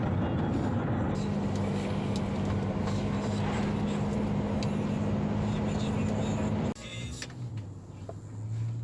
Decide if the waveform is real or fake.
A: real